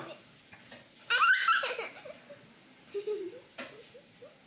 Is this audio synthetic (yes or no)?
no